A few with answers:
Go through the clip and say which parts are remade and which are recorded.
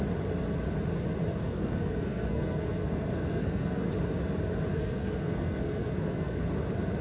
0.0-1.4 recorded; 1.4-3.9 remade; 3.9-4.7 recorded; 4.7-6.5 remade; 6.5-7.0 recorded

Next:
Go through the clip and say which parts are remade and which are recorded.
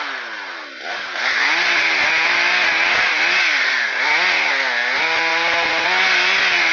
0.0-6.7 recorded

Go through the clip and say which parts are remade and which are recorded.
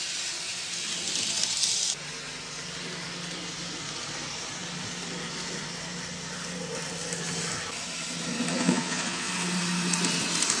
0.0-8.5 recorded; 8.5-9.3 remade; 9.3-10.6 recorded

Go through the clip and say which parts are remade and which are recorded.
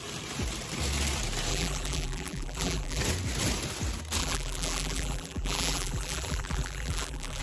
0.0-1.5 recorded; 1.5-3.0 remade; 3.0-4.2 recorded; 4.2-7.4 remade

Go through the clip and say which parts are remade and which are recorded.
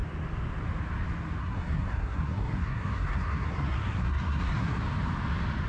0.0-1.4 recorded; 1.4-4.8 remade; 4.8-5.7 recorded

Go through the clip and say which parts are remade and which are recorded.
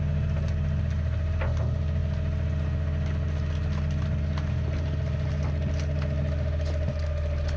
0.0-7.6 recorded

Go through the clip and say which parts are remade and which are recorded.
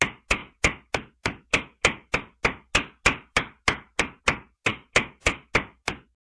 0.0-6.3 recorded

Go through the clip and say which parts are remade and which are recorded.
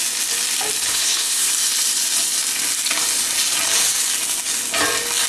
0.0-0.9 recorded; 0.9-1.5 remade; 1.5-5.3 recorded